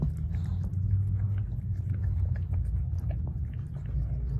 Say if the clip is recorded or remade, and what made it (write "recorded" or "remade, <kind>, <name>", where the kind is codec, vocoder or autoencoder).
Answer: recorded